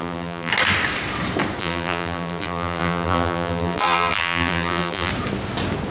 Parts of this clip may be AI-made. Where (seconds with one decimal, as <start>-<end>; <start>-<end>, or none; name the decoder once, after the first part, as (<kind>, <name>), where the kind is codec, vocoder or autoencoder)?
0.0-0.5 (vocoder, BigVGAN v2); 1.6-5.1